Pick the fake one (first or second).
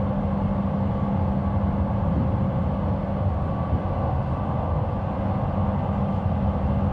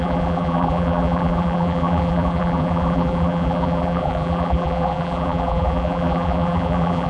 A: second